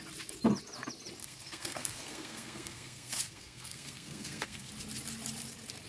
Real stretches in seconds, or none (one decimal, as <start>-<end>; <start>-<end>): 0.0-1.2; 4.7-5.9